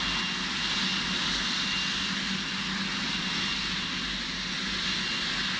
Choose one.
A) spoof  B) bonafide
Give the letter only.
B